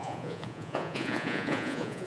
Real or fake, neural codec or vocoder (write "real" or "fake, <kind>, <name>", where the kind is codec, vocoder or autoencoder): fake, vocoder, Vocos